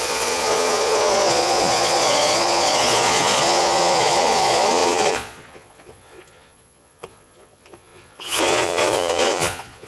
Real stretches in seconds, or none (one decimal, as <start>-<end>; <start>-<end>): none